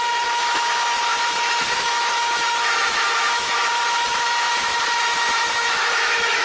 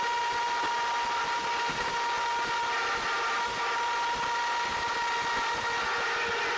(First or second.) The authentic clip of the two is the second